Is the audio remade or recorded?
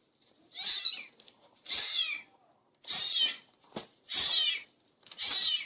remade